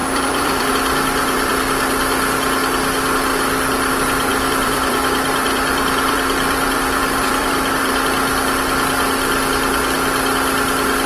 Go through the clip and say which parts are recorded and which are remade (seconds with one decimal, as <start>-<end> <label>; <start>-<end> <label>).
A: 0.0-0.7 remade; 0.7-1.2 recorded; 1.2-1.8 remade; 1.8-4.3 recorded; 4.3-7.8 remade; 7.8-11.1 recorded